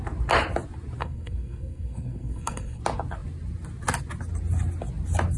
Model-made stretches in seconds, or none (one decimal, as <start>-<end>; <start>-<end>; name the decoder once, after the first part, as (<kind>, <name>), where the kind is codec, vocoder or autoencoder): 1.0-2.8 (codec, SNAC)